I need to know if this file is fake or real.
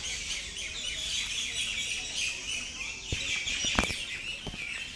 real